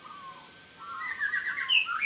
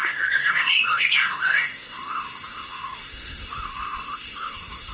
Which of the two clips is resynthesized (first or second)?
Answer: second